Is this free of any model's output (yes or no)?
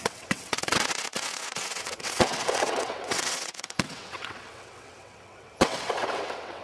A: no